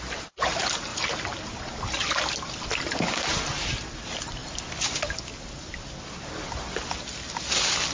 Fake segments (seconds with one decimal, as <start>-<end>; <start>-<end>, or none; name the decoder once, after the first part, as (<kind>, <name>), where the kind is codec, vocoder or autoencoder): none